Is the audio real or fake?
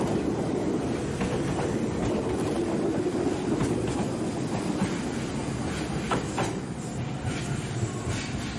real